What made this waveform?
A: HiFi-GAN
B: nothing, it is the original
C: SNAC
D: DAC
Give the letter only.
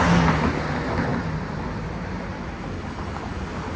B